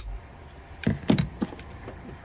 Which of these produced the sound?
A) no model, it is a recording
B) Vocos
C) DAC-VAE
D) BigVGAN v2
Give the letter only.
A